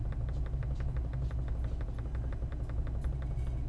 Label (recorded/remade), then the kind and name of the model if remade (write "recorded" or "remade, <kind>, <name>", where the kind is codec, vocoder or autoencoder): recorded